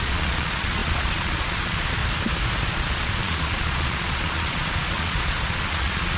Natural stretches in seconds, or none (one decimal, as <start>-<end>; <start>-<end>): 2.0-2.7

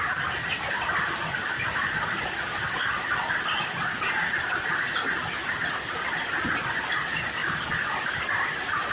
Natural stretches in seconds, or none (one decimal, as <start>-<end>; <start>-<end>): 0.0-7.4

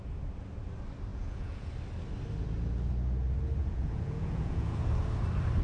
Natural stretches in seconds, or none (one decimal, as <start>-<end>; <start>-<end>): 0.0-1.1; 1.7-3.6; 4.9-5.6

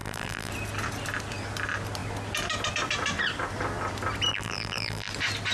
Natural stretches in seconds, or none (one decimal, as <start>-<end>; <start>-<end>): 0.5-4.3; 5.1-5.5